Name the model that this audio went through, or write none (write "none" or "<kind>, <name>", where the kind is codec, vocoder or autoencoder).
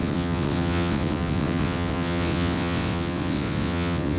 vocoder, WaveNeXt